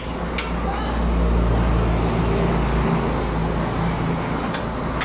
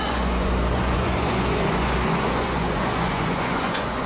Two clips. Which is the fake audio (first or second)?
second